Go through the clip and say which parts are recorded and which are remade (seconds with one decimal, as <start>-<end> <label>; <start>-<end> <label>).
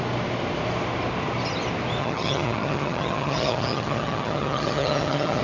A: 0.0-2.0 recorded; 2.0-5.4 remade